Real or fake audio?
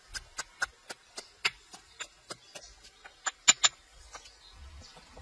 real